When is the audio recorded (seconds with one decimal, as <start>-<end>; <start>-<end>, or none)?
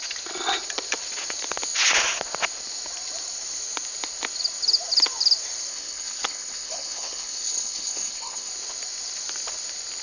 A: 0.0-5.7; 8.5-10.0